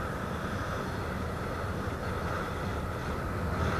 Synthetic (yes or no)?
no